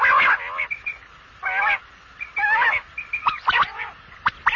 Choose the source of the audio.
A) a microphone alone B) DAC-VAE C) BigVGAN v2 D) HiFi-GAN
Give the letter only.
A